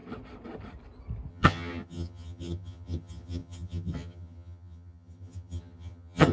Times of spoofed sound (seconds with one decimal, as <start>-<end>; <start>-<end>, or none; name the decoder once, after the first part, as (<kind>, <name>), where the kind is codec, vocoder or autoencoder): 1.3-6.3 (vocoder, HiFi-GAN)